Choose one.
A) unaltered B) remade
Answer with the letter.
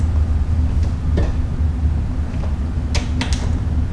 A